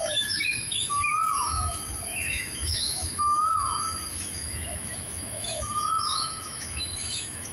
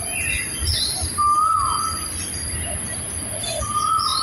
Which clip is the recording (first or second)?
second